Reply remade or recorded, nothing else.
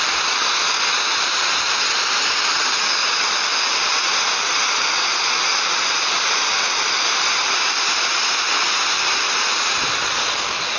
recorded